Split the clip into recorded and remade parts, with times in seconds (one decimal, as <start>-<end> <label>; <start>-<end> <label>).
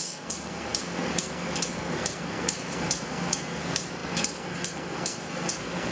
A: 0.0-5.9 remade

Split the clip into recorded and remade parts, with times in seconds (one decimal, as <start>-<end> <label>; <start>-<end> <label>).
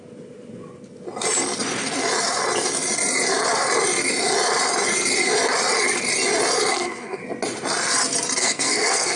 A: 0.0-6.7 recorded; 6.7-7.2 remade; 7.2-8.4 recorded; 8.4-9.2 remade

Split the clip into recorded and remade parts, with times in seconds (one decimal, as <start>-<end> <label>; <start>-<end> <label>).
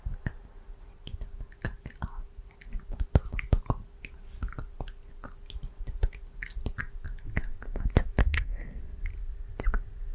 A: 0.0-8.2 recorded; 8.2-8.8 remade; 8.8-10.1 recorded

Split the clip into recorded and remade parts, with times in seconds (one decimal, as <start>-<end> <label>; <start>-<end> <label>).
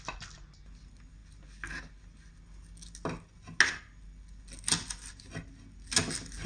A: 0.0-6.5 recorded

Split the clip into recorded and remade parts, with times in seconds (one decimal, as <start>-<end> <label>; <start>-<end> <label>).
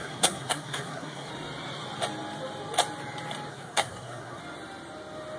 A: 0.0-1.3 remade; 1.3-3.5 recorded; 3.5-4.4 remade; 4.4-5.4 recorded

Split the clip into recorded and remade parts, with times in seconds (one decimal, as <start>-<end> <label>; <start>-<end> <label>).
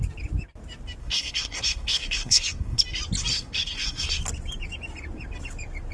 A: 0.0-1.0 recorded; 1.0-2.8 remade; 2.8-3.3 recorded; 3.3-4.2 remade; 4.2-5.9 recorded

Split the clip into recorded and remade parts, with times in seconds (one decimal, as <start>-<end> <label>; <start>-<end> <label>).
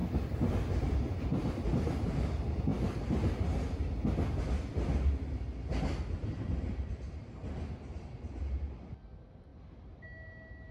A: 0.0-10.7 recorded